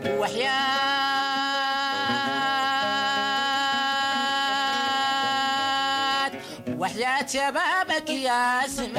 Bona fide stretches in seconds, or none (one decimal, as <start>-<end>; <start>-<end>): 0.0-1.2; 2.4-6.7; 8.6-9.0